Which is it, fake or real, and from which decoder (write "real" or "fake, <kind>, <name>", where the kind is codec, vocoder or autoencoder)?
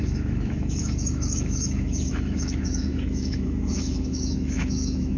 fake, autoencoder, DAC-VAE